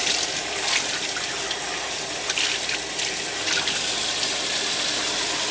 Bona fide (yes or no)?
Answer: yes